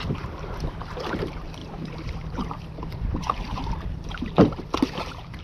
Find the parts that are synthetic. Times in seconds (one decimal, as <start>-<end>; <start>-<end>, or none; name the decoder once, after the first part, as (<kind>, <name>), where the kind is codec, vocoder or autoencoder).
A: 0.0-5.4 (vocoder, BigVGAN v2)